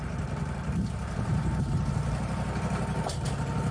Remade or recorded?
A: remade